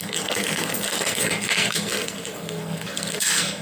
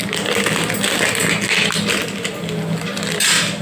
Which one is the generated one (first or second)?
first